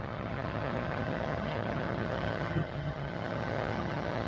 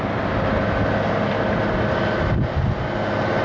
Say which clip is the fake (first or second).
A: first